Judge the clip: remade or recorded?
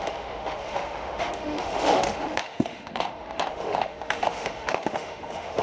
remade